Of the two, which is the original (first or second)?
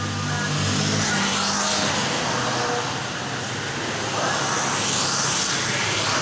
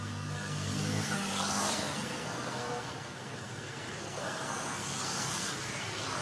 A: first